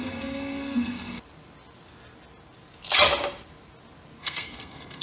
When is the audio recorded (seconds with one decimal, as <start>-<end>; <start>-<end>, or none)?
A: 1.2-4.2